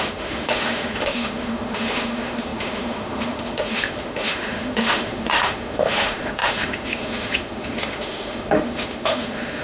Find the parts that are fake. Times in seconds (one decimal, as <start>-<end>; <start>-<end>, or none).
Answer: 0.0-9.6